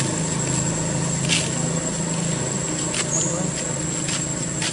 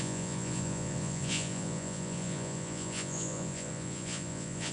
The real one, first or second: first